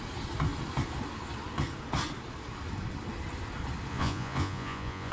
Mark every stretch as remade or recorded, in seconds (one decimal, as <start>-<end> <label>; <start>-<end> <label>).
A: 0.0-3.9 recorded; 3.9-5.1 remade

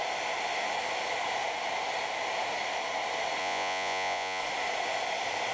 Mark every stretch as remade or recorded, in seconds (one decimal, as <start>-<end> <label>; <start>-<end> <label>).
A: 0.0-3.4 recorded; 3.4-4.4 remade; 4.4-5.5 recorded

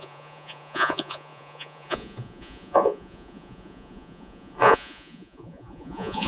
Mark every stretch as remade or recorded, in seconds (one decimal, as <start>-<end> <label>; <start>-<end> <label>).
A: 0.0-6.3 remade

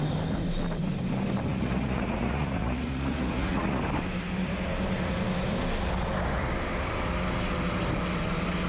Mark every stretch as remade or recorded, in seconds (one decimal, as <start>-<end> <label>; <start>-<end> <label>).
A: 0.0-1.5 recorded; 1.5-3.8 remade; 3.8-8.7 recorded

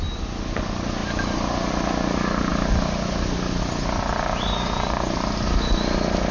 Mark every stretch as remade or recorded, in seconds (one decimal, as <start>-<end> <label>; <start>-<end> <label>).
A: 0.0-6.3 recorded

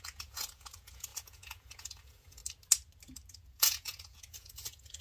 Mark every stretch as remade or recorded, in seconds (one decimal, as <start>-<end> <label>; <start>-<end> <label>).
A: 0.0-2.4 remade; 2.4-3.3 recorded; 3.3-5.0 remade

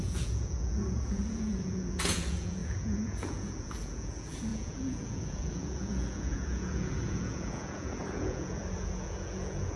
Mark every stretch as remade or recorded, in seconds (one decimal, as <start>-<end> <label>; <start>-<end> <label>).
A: 0.0-9.8 remade